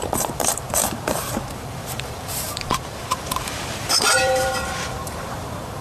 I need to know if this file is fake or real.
fake